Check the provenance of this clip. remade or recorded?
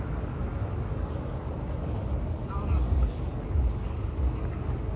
remade